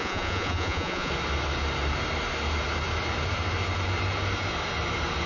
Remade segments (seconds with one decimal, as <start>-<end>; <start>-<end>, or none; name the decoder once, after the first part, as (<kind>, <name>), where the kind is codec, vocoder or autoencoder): 0.0-1.1 (vocoder, Vocos)